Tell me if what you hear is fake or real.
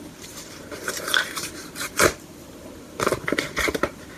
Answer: fake